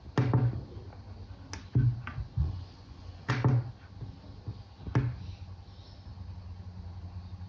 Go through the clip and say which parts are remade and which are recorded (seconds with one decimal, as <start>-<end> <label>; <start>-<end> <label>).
0.0-2.4 recorded; 2.4-3.3 remade; 3.3-7.5 recorded